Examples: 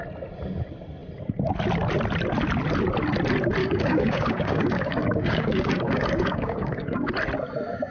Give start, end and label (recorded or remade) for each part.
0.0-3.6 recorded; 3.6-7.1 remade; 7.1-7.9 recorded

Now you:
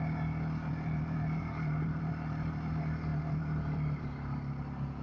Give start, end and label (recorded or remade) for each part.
0.0-0.7 recorded; 0.7-2.7 remade; 2.7-3.1 recorded; 3.1-4.6 remade; 4.6-5.0 recorded

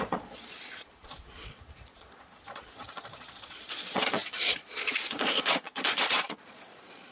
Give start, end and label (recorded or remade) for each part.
0.0-7.1 remade

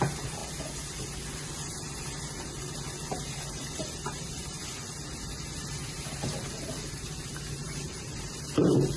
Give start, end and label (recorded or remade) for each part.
0.0-4.6 remade; 4.6-5.9 recorded; 5.9-9.0 remade

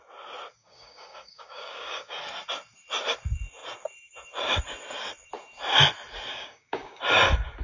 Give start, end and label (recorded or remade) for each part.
0.0-0.6 recorded; 0.6-2.2 remade; 2.2-6.3 recorded; 6.3-7.0 remade; 7.0-7.6 recorded

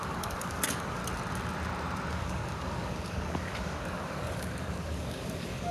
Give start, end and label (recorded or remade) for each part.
0.0-1.0 remade; 1.0-2.1 recorded; 2.1-5.7 remade